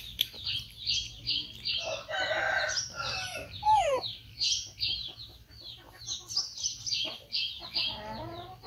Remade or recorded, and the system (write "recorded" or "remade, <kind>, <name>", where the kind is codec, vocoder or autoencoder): recorded